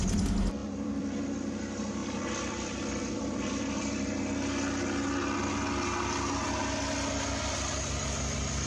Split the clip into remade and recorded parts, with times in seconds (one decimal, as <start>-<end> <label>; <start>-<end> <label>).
0.0-0.6 recorded; 0.6-1.2 remade; 1.2-2.0 recorded; 2.0-4.2 remade; 4.2-8.7 recorded